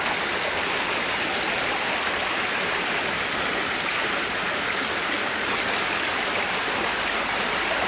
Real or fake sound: real